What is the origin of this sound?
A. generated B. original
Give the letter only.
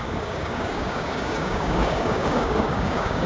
A